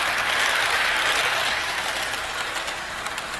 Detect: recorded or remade recorded